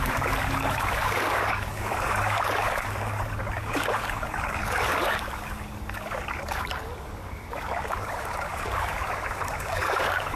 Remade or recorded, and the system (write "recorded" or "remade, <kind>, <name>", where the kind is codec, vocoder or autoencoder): remade, codec, DAC